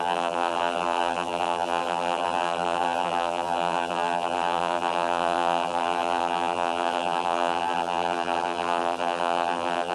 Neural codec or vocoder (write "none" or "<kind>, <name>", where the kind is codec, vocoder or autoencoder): vocoder, BigVGAN v2